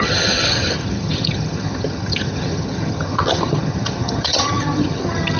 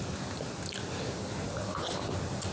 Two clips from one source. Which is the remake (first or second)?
first